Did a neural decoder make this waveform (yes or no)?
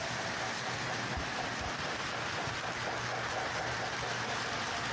no